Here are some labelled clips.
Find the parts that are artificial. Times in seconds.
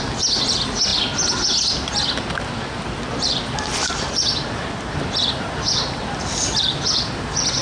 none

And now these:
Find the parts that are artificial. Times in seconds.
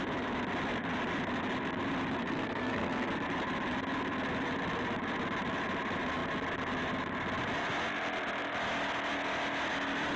2.2-3.1 (codec, SNAC)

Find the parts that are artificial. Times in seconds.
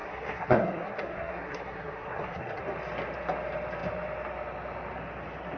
0.0-2.6 (codec, SNAC)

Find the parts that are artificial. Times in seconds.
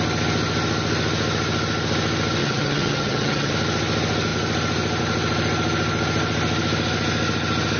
2.4-3.5 (vocoder, HiFi-GAN)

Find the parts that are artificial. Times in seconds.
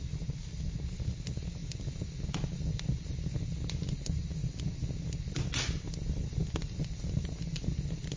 none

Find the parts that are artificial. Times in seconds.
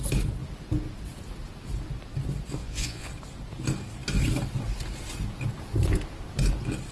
2.6-3.1 (vocoder, Vocos)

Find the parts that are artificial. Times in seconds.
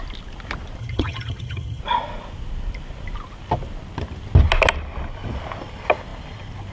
0.8-1.8 (vocoder, HiFi-GAN)